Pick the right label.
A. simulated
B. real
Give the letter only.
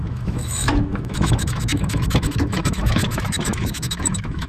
A